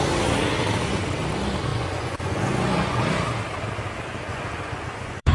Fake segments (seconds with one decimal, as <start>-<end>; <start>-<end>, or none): 1.7-3.0; 4.3-5.3